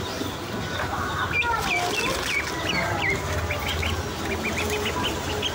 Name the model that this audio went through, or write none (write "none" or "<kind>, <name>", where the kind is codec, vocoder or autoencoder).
none